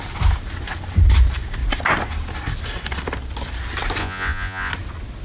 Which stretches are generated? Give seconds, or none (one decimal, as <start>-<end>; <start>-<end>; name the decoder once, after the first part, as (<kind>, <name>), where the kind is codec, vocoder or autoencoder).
4.0-4.7 (vocoder, Vocos)